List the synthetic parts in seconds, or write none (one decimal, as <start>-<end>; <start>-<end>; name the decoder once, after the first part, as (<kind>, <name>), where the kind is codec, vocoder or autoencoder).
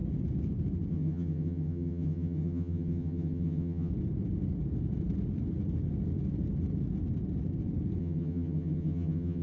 0.9-3.9 (vocoder, HiFi-GAN); 8.0-9.4